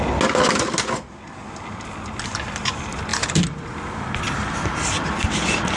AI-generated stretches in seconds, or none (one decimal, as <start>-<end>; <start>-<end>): 3.1-5.8